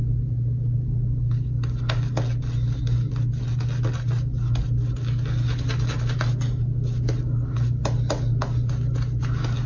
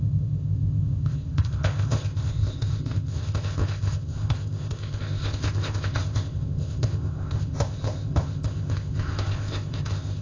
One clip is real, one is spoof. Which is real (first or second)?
first